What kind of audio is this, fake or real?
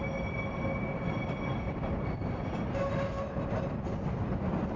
real